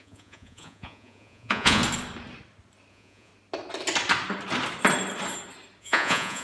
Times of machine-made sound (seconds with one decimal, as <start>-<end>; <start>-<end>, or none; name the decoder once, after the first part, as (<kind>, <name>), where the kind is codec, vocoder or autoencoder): 0.0-1.8 (vocoder, Vocos); 2.9-3.3; 5.8-6.4